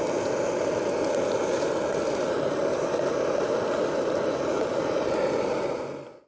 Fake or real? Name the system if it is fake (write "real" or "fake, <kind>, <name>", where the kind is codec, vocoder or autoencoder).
real